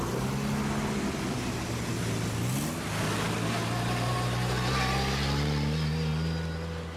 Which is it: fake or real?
real